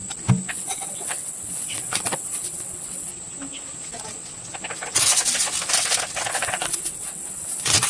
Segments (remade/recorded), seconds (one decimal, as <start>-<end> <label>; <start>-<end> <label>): 0.0-0.5 recorded; 0.5-3.1 remade; 3.1-6.3 recorded; 6.3-7.9 remade